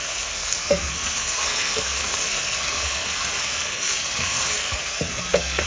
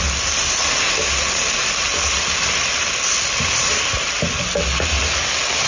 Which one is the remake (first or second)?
first